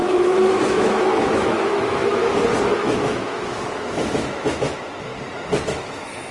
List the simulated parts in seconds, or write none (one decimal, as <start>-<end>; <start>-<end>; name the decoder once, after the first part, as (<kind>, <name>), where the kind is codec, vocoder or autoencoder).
0.0-2.2 (autoencoder, DAC-VAE); 2.8-5.1; 5.7-6.3